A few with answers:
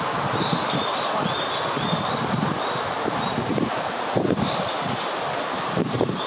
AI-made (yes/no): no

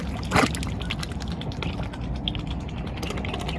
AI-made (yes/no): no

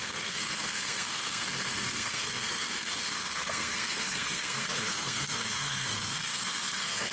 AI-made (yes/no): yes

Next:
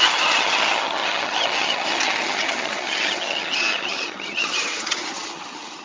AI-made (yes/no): yes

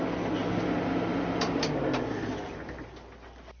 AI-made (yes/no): no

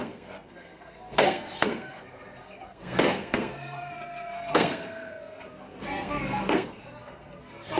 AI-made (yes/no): yes